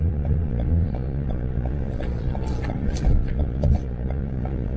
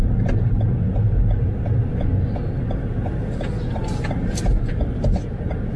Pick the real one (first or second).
second